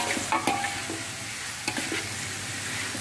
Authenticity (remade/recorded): recorded